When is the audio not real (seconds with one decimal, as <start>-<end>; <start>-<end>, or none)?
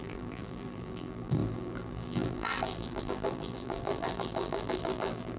0.0-5.4